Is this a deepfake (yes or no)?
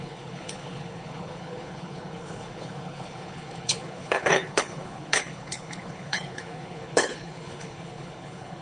yes